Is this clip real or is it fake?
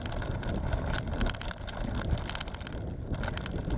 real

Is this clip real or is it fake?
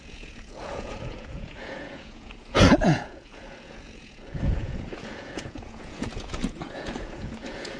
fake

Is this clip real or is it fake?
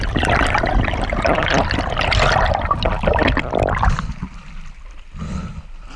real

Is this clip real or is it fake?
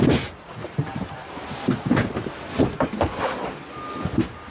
real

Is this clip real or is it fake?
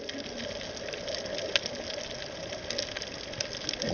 real